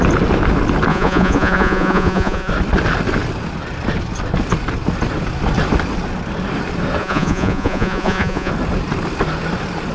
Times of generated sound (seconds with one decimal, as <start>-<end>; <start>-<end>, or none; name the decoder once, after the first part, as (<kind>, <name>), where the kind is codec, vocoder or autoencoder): 0.9-2.5 (vocoder, Vocos); 7.0-8.5

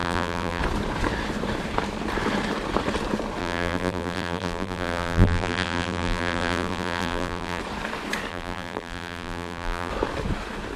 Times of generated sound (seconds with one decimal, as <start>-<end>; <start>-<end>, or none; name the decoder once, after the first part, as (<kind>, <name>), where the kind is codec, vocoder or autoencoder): 0.0-0.6 (vocoder, BigVGAN v2); 3.4-7.6; 8.3-9.9

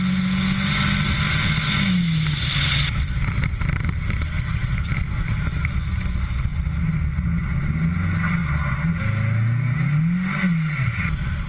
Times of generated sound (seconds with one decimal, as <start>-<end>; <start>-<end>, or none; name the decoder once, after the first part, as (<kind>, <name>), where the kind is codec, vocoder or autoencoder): none

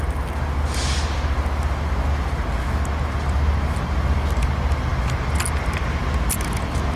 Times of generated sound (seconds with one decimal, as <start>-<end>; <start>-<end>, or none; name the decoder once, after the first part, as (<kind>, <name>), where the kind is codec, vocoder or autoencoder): none

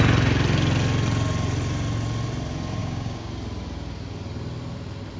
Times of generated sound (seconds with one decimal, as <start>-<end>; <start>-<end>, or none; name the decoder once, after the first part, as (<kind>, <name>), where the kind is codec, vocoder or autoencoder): 2.8-3.3 (codec, DAC)

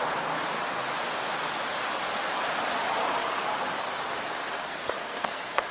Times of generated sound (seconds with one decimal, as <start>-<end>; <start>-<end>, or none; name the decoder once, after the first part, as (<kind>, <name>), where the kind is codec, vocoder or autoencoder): 4.6-5.7 (codec, SNAC)